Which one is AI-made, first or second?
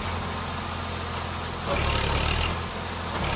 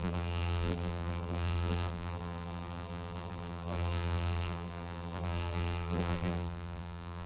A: second